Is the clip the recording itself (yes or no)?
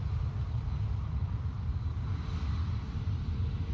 yes